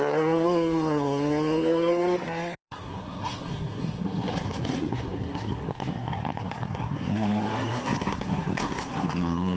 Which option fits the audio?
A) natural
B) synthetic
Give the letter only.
B